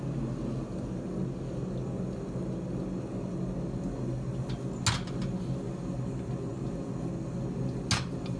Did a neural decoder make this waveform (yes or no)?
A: no